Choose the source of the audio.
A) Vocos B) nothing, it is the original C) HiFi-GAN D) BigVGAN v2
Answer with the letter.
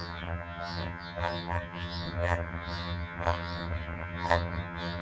C